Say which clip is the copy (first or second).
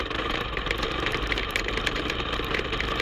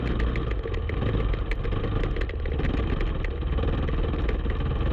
first